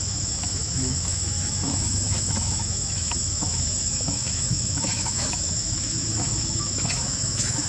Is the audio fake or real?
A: fake